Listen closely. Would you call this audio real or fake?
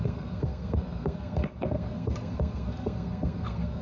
fake